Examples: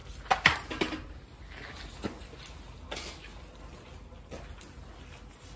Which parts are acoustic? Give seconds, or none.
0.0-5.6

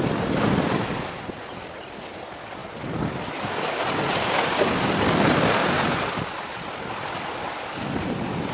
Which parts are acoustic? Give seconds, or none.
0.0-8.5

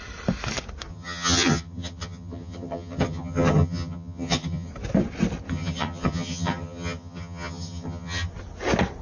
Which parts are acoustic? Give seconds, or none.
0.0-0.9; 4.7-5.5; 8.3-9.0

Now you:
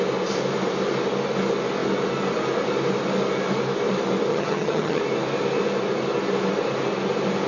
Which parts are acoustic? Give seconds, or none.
0.0-4.3; 5.0-7.5

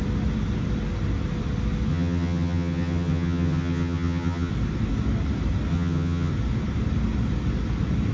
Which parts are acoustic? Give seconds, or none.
0.0-1.9; 4.5-5.7; 6.3-8.1

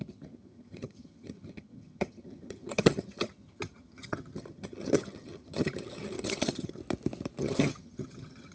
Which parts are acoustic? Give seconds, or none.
6.8-7.4

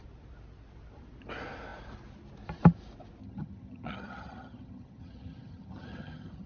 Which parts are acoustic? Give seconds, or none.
0.0-3.2